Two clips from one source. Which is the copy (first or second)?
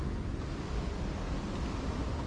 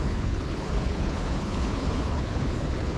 second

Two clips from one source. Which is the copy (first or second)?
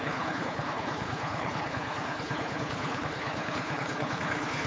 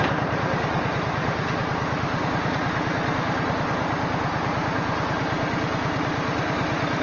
first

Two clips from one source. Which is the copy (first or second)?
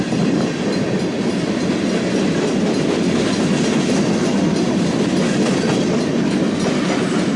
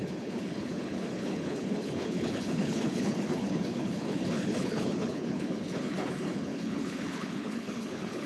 second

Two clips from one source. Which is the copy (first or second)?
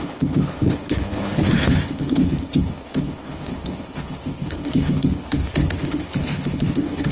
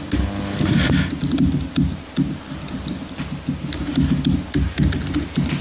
first